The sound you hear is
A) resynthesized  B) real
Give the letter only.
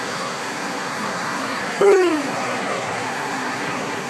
A